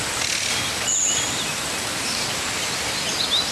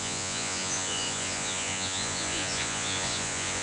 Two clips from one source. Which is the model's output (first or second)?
second